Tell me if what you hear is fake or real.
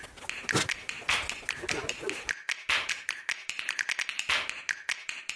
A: real